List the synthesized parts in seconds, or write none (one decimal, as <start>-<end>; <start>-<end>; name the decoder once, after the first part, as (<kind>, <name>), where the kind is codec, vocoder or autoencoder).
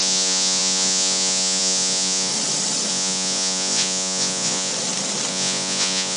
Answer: 0.0-2.3 (vocoder, Vocos); 2.9-4.7; 5.3-6.2